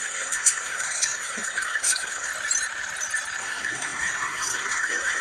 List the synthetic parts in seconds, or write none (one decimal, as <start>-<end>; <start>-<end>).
0.0-2.3; 3.4-5.2